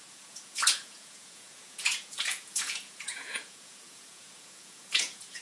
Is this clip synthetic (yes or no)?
yes